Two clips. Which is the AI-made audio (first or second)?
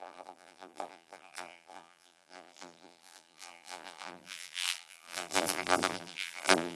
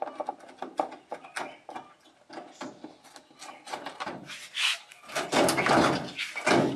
first